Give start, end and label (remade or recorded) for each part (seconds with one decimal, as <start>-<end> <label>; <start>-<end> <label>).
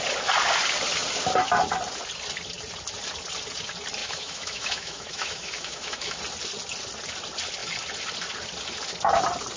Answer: 0.0-4.0 recorded; 4.0-6.2 remade; 6.2-9.6 recorded